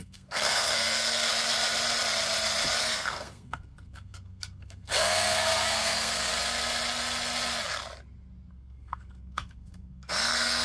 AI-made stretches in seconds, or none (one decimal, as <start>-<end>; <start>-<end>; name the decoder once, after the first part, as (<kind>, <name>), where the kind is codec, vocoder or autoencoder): 0.0-1.3 (codec, SNAC); 2.8-6.3; 8.5-10.6